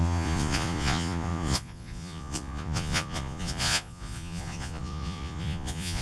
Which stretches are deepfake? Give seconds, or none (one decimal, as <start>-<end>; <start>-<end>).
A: 0.0-6.0